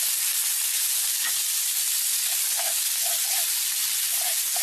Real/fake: real